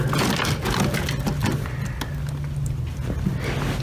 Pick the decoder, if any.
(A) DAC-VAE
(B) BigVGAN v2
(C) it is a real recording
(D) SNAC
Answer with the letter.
C